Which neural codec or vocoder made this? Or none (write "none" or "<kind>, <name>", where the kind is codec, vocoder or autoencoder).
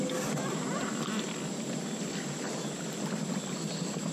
none